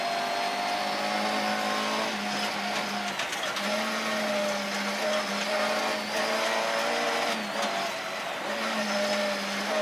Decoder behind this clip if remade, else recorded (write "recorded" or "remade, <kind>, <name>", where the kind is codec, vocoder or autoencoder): recorded